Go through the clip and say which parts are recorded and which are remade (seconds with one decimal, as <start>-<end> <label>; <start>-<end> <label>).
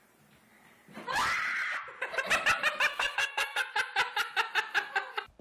0.0-2.9 recorded; 2.9-3.7 remade; 3.7-5.4 recorded